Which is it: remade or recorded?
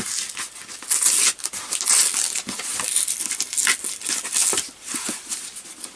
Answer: recorded